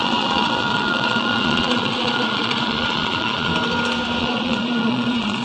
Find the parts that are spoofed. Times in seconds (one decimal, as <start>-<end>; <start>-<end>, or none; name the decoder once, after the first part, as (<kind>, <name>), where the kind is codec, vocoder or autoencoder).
0.0-3.5 (vocoder, Vocos); 4.2-5.4